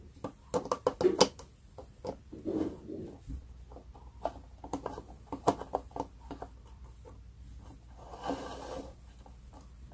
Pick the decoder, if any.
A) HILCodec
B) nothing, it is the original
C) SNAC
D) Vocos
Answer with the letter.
B